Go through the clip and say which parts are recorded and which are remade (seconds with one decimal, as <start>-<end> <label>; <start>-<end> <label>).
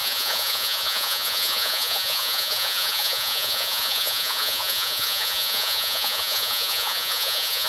0.0-7.7 remade